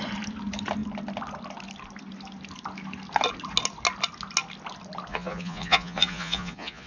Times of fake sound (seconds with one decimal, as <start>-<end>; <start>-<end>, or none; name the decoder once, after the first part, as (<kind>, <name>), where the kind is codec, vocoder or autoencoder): 5.1-6.9 (vocoder, Vocos)